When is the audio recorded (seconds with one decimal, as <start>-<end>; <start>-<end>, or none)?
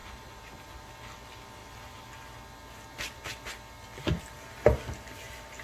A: 0.9-5.6